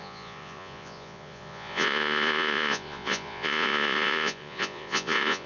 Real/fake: fake